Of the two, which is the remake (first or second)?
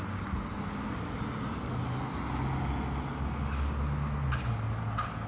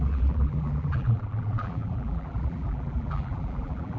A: second